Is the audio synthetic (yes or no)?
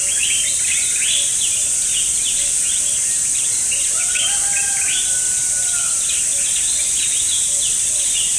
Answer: no